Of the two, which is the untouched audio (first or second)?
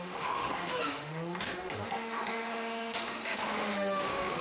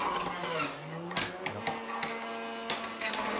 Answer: second